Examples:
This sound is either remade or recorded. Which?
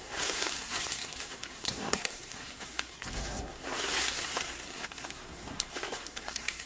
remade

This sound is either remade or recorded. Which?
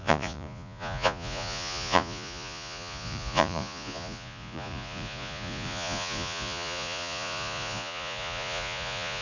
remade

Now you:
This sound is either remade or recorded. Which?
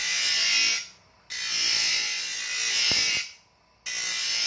recorded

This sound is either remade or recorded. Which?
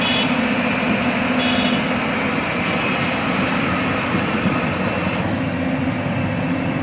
recorded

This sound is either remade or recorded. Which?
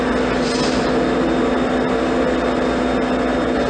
recorded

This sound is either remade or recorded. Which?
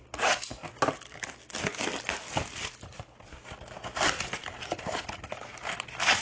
recorded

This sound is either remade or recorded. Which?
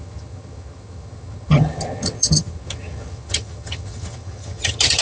remade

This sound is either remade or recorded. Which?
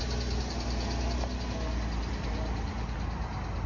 recorded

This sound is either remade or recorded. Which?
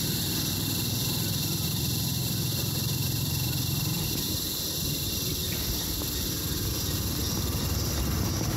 remade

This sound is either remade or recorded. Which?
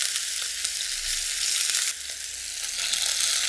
recorded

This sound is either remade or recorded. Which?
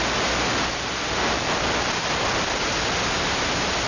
recorded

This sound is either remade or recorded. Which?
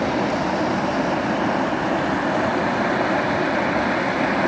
recorded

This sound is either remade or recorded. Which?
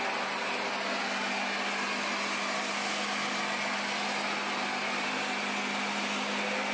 recorded